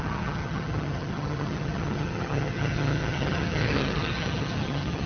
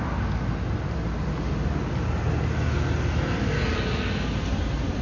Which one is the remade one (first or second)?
first